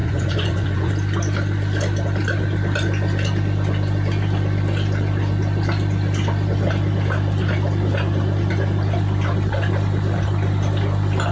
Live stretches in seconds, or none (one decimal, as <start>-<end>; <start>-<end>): 0.9-11.3